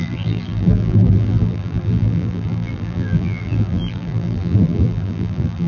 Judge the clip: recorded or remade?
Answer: remade